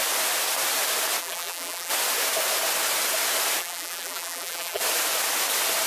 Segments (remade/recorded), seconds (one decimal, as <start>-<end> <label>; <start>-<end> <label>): 0.0-1.2 recorded; 1.2-1.9 remade; 1.9-3.6 recorded; 3.6-4.8 remade; 4.8-5.9 recorded